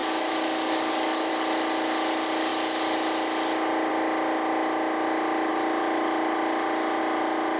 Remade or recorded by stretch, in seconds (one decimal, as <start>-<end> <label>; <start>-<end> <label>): 0.0-1.3 remade; 1.3-7.6 recorded